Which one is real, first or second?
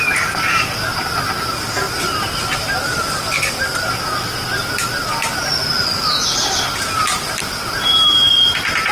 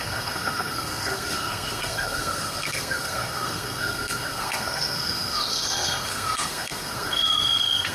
first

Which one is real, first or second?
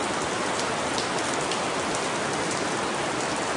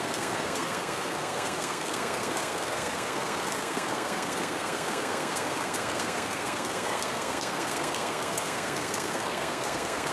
first